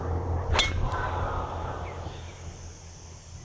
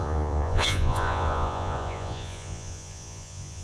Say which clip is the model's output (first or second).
second